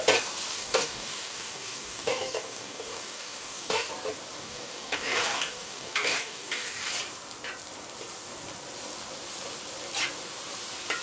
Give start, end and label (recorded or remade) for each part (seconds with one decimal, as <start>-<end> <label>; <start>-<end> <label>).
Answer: 0.0-0.5 recorded; 0.5-3.9 remade; 3.9-4.4 recorded; 4.4-6.9 remade; 6.9-11.0 recorded